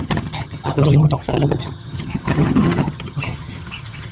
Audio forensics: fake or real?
fake